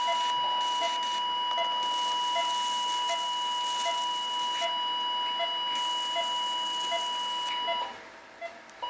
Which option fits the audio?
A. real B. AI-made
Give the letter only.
A